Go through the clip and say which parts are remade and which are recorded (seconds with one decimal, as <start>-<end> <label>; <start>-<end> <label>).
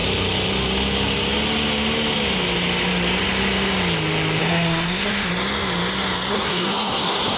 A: 0.0-4.4 recorded; 4.4-5.3 remade; 5.3-6.3 recorded; 6.3-7.4 remade